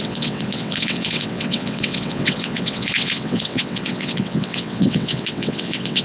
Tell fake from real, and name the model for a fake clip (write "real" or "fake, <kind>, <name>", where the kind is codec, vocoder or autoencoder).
fake, vocoder, WaveNeXt